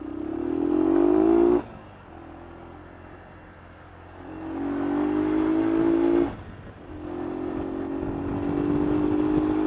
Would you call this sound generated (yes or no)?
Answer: no